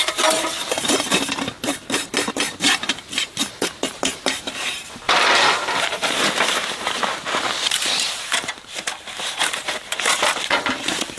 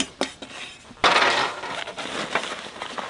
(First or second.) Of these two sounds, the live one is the second